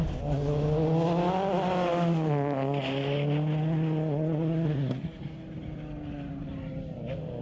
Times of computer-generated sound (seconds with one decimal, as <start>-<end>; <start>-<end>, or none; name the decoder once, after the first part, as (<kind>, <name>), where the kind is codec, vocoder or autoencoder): none